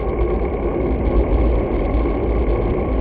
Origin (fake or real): real